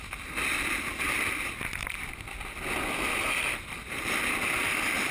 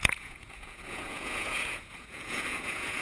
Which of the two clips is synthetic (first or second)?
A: second